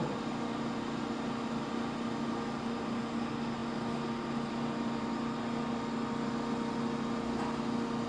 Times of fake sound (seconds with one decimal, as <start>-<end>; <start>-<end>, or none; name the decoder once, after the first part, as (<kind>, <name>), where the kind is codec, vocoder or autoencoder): none